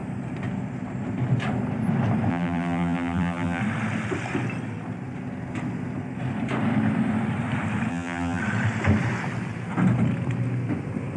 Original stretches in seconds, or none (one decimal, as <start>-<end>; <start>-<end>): 0.0-2.3; 3.6-7.9; 8.4-11.2